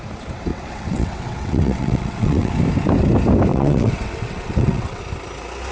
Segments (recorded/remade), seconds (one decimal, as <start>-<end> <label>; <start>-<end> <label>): 0.0-0.5 recorded; 0.5-2.5 remade; 2.5-3.5 recorded; 3.5-5.0 remade; 5.0-5.7 recorded